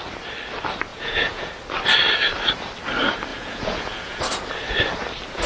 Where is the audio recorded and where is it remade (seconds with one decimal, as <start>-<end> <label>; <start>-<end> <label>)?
0.0-0.9 recorded; 0.9-1.5 remade; 1.5-3.3 recorded; 3.3-4.2 remade; 4.2-5.5 recorded